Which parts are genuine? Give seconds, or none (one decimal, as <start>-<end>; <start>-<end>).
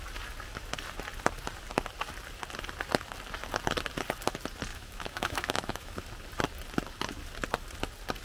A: 0.0-4.7; 6.0-8.2